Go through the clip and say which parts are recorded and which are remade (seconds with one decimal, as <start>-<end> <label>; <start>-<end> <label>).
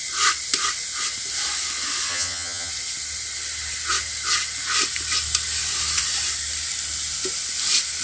0.0-2.1 recorded; 2.1-2.7 remade; 2.7-8.0 recorded